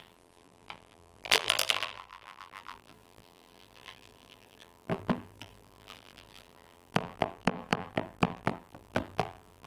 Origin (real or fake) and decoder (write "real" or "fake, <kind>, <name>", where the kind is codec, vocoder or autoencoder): fake, vocoder, BigVGAN v2